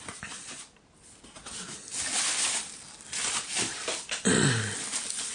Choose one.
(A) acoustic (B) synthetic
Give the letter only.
A